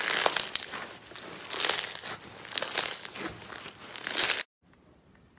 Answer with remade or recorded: recorded